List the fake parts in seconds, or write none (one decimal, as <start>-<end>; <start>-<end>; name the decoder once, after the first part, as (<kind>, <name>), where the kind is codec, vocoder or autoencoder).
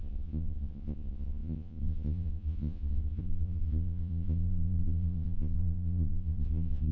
0.0-6.9 (vocoder, Vocos)